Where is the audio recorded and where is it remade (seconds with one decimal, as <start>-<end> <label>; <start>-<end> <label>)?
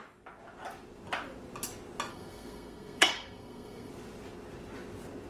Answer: 0.0-2.1 recorded; 2.1-3.9 remade; 3.9-5.3 recorded